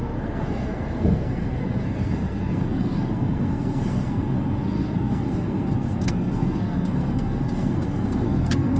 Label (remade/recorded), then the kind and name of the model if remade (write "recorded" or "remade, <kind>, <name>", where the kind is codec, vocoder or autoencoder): remade, codec, SNAC